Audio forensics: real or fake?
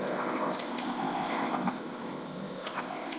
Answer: fake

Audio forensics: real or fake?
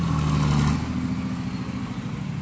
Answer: real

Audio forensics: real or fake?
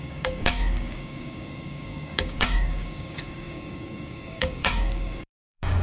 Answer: fake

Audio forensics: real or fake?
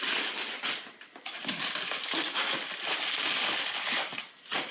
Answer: real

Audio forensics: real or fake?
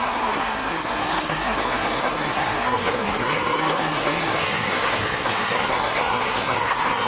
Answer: fake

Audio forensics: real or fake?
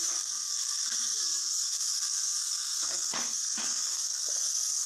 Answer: fake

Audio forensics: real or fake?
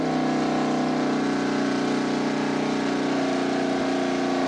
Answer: real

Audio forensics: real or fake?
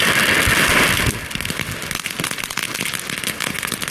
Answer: real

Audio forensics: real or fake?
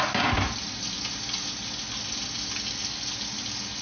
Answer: real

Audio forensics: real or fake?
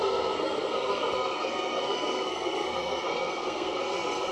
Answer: fake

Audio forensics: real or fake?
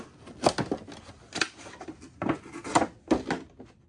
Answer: real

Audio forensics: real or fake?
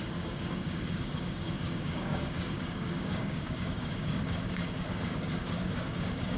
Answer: fake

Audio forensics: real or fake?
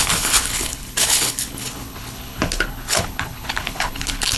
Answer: fake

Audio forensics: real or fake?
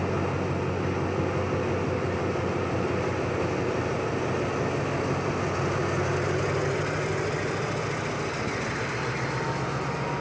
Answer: real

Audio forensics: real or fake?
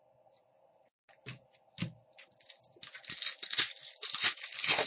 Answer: real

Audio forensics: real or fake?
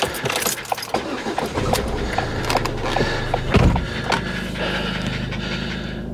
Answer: real